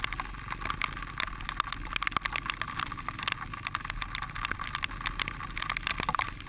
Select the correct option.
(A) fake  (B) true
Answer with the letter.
B